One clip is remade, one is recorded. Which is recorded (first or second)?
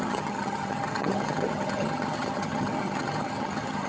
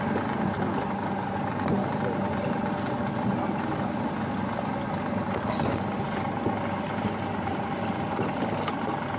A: second